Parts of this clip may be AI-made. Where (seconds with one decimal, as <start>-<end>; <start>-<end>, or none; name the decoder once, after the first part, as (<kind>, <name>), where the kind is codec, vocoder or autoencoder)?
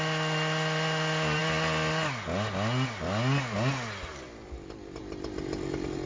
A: none